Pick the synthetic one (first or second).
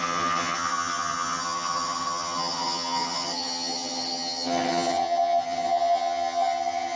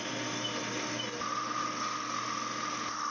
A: first